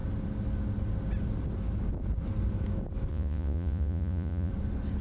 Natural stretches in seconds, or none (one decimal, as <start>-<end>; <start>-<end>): 0.0-3.1; 4.5-5.0